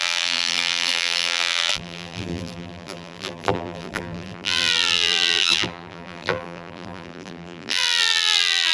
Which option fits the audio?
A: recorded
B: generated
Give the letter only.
B